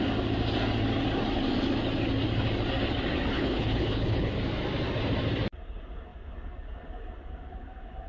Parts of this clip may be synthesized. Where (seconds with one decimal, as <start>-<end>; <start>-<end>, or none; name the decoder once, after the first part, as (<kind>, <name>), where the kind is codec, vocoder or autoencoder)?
3.3-4.3 (codec, HILCodec)